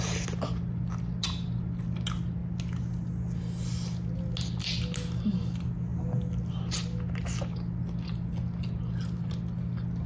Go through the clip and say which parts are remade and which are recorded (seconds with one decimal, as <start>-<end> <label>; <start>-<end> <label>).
0.0-10.1 recorded